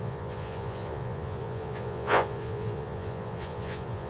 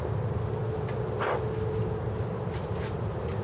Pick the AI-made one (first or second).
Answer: first